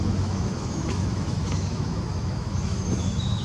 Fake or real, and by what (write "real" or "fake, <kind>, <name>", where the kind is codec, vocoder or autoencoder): fake, autoencoder, DAC-VAE